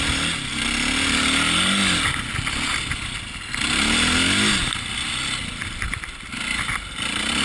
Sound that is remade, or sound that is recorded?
recorded